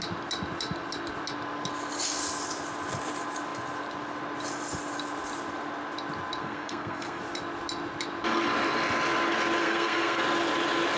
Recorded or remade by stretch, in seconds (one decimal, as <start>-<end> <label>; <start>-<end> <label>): 0.0-6.4 recorded; 6.4-7.2 remade; 7.2-9.6 recorded; 9.6-10.2 remade; 10.2-11.0 recorded

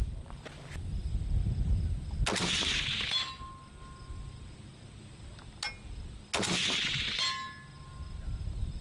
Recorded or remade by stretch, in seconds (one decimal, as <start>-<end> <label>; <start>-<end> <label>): 0.0-8.8 recorded

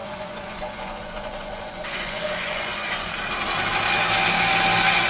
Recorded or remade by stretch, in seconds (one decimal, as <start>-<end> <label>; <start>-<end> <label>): 0.0-3.1 remade; 3.1-5.1 recorded

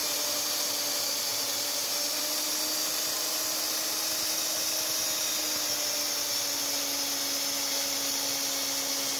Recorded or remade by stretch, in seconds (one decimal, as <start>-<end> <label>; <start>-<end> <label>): 0.0-0.7 remade; 0.7-1.3 recorded; 1.3-2.2 remade; 2.2-9.2 recorded

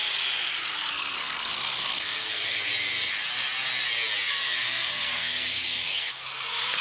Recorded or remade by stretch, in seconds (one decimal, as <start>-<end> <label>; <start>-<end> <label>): 0.0-0.9 recorded; 0.9-2.7 remade; 2.7-4.3 recorded; 4.3-6.8 remade

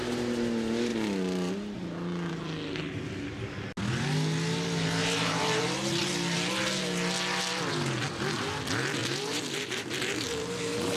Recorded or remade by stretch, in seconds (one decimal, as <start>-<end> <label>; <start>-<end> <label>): 0.0-5.0 recorded; 5.0-5.6 remade; 5.6-9.0 recorded; 9.0-10.6 remade; 10.6-11.0 recorded